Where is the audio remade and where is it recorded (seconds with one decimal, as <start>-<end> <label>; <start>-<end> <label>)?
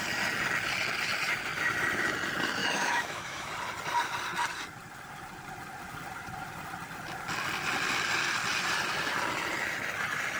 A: 0.0-2.6 recorded; 2.6-3.5 remade; 3.5-10.4 recorded